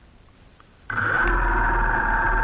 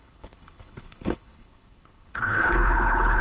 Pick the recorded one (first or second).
first